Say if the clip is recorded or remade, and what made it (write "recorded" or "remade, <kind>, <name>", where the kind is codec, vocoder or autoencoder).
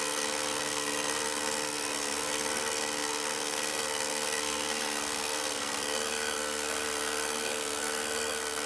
remade, codec, SNAC